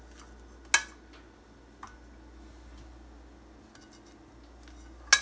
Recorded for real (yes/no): yes